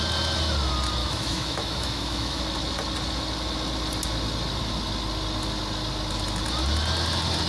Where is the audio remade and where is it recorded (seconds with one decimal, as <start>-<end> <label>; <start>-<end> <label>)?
0.0-1.0 recorded; 1.0-2.4 remade; 2.4-7.5 recorded